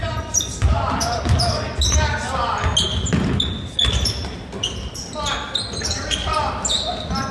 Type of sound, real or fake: real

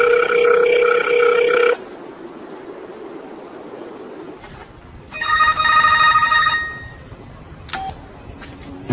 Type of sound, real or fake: real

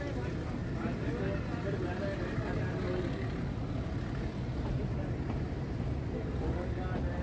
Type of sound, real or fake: real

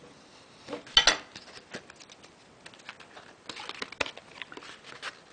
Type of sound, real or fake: real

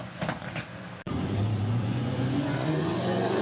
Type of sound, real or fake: fake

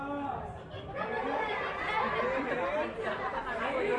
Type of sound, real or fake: real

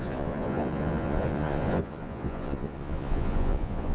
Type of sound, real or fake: fake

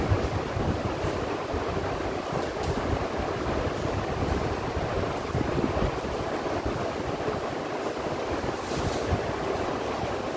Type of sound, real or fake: real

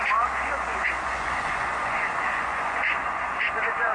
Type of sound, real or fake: fake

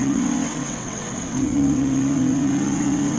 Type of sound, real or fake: fake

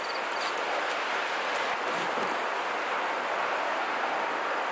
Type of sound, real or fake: real